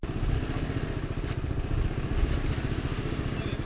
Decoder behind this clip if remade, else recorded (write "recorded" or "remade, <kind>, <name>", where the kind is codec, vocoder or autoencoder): recorded